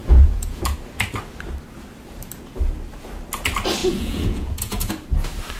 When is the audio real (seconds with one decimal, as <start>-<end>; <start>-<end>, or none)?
0.6-3.8; 4.9-5.6